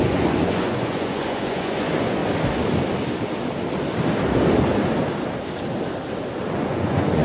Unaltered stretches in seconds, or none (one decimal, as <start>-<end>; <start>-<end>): 2.2-6.5